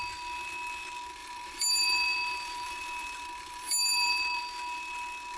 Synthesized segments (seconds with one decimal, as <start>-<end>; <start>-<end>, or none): 1.2-4.4